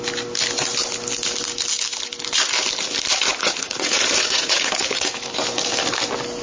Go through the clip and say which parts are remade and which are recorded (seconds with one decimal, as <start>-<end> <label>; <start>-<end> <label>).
0.0-3.1 recorded; 3.1-5.1 remade; 5.1-6.4 recorded